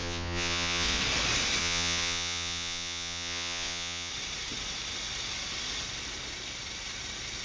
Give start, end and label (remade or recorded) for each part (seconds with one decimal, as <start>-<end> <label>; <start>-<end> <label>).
0.0-1.0 remade; 1.0-1.6 recorded; 1.6-4.1 remade; 4.1-7.4 recorded